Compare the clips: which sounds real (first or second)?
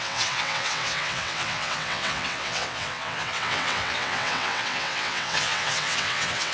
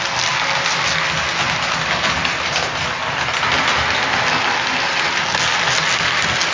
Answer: second